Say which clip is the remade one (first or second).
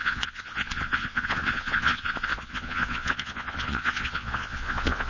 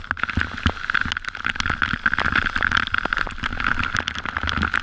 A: first